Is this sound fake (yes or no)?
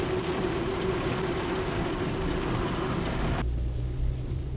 no